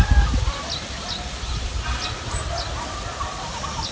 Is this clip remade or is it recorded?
recorded